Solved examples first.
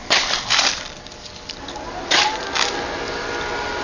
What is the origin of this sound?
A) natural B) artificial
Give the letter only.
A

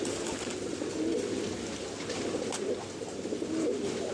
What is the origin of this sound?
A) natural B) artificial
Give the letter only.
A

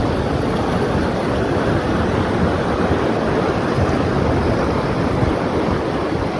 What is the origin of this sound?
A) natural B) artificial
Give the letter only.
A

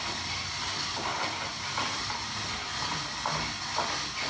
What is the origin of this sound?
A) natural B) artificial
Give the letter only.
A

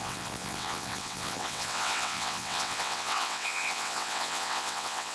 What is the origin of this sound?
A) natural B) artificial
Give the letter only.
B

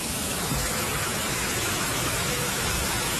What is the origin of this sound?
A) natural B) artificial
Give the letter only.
B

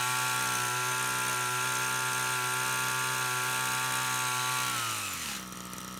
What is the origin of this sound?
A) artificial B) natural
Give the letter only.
B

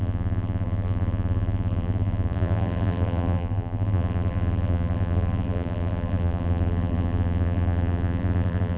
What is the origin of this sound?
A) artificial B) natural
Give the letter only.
A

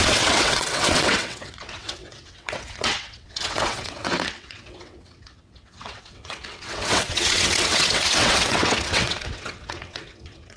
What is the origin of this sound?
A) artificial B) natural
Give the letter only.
A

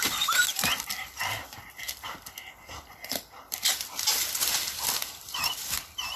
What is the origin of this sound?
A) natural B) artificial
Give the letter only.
B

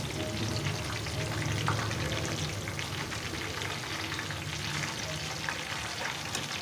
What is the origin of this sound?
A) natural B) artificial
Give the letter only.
A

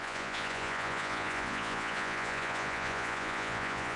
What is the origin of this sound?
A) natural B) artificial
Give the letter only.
B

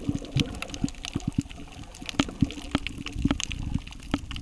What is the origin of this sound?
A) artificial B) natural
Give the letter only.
B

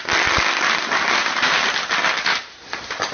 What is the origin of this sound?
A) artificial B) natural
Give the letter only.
B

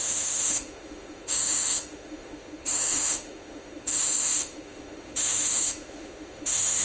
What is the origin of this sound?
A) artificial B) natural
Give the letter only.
A